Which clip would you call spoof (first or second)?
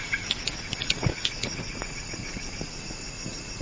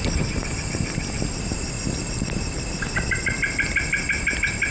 first